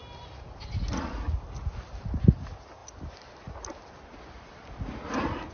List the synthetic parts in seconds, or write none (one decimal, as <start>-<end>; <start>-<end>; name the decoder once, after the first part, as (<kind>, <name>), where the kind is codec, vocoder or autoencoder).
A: none